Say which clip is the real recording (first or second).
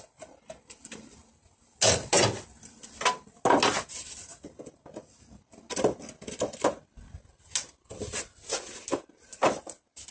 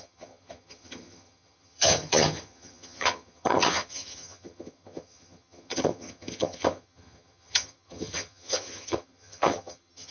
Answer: first